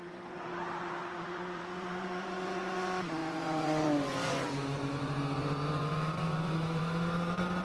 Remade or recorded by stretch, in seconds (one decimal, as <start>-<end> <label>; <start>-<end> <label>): 0.0-7.6 remade